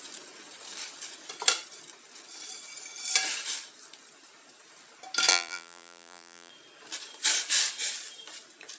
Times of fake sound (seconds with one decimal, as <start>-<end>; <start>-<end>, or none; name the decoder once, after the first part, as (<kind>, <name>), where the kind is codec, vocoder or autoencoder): 5.3-6.5 (vocoder, BigVGAN v2)